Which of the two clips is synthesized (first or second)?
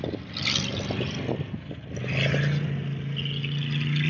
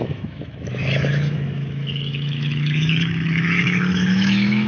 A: second